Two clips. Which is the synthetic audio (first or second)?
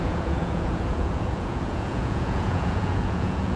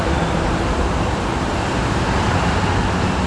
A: first